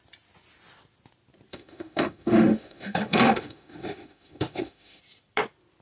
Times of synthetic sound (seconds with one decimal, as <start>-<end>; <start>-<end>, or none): 1.5-5.0